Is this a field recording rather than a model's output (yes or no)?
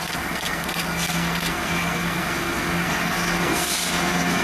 no